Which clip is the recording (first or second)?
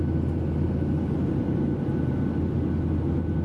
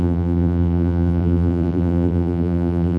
first